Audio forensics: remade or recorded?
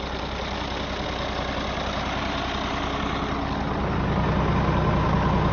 recorded